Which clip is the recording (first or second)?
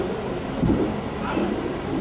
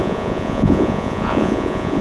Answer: first